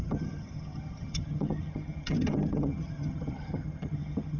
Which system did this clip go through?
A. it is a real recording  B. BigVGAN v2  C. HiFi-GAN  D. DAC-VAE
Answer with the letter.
C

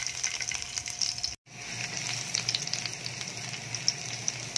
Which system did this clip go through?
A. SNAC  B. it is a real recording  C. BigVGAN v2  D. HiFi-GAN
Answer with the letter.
B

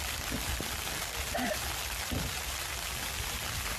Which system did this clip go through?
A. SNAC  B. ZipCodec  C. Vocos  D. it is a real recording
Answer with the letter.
D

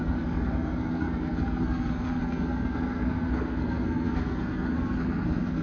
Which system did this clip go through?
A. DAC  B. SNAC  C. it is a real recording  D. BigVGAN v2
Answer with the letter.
B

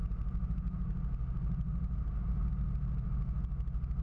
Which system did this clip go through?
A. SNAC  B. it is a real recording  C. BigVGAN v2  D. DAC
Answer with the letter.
B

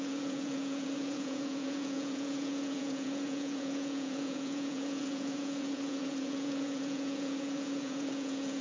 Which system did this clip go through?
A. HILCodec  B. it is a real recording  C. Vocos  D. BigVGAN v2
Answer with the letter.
C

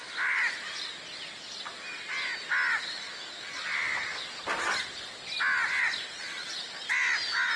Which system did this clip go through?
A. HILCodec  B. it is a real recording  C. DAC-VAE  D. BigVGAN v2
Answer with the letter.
B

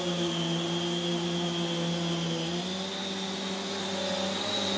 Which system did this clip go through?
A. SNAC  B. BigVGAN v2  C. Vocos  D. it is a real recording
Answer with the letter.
D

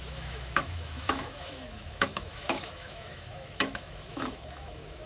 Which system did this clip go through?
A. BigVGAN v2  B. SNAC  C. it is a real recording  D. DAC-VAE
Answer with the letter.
D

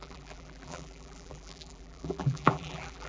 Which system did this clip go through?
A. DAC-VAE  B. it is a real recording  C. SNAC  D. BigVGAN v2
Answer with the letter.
D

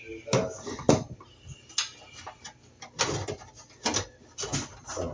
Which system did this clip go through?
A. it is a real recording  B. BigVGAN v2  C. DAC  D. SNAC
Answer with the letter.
A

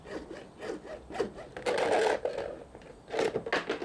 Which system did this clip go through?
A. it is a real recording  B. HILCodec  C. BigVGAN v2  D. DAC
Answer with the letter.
A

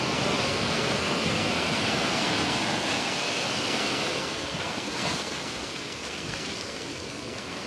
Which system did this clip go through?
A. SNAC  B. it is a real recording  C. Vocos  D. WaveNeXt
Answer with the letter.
A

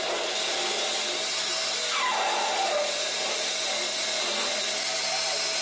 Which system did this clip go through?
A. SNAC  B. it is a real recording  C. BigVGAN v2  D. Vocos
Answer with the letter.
B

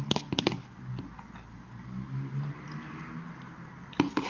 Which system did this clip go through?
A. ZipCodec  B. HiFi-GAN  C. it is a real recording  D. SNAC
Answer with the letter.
C